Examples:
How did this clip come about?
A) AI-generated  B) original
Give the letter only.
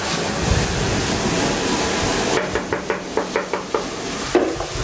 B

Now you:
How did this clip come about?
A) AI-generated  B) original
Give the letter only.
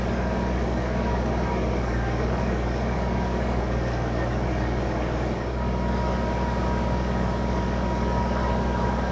A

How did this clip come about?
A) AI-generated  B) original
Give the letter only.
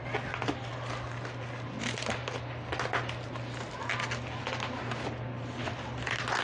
B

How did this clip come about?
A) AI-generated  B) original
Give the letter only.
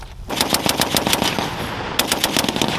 B